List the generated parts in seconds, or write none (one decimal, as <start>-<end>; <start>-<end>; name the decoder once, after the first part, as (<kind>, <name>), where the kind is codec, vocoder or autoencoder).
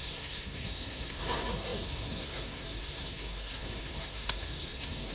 0.0-5.1 (codec, SNAC)